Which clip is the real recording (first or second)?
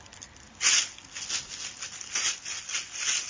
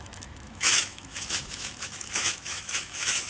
first